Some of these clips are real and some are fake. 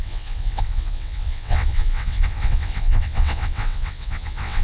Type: fake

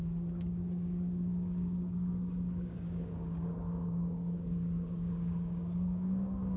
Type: fake